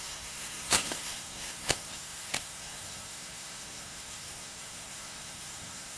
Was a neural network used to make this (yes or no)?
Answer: yes